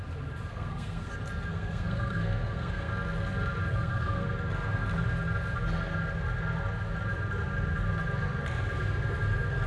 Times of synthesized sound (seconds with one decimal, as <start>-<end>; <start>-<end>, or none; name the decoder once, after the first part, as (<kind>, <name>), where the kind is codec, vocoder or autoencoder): 0.5-1.1 (codec, SNAC); 1.5-2.9; 3.7-4.3

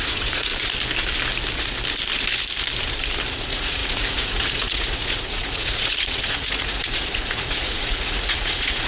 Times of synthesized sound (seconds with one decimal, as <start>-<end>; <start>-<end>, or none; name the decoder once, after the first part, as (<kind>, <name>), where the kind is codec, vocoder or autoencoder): 0.0-0.5 (vocoder, Vocos); 3.3-8.9

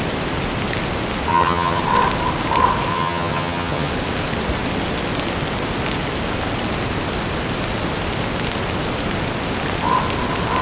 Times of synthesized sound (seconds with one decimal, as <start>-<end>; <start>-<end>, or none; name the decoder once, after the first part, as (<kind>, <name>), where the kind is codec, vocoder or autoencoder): 1.3-1.8 (vocoder, HiFi-GAN); 2.9-3.9

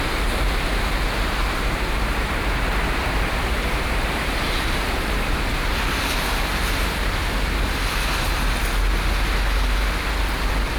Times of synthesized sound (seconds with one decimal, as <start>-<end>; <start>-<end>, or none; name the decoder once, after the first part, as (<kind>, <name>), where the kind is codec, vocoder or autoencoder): 1.4-5.7 (vocoder, BigVGAN v2)

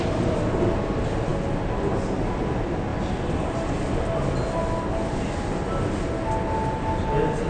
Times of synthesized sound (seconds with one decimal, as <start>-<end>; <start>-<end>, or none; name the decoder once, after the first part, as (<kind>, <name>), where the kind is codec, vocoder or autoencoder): none

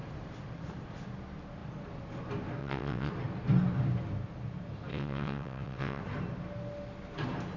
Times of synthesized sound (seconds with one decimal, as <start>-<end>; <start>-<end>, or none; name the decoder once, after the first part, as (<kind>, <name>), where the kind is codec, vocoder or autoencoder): 2.6-3.1 (vocoder, WaveNeXt); 4.9-6.0

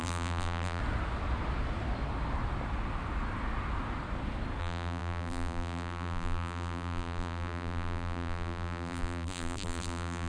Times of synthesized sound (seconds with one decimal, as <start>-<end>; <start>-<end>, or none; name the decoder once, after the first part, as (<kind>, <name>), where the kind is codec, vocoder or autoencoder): 0.0-0.8 (vocoder, BigVGAN v2); 4.6-10.3

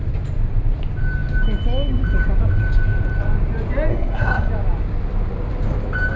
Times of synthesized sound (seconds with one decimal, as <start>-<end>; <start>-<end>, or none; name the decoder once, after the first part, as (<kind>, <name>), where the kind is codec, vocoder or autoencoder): 3.9-4.5 (codec, SNAC)